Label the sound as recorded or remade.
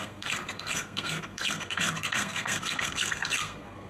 remade